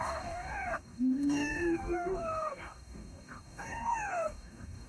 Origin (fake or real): fake